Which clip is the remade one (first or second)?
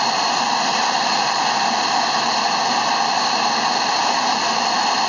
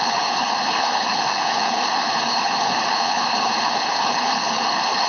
second